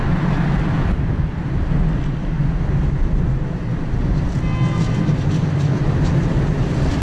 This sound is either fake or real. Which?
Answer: real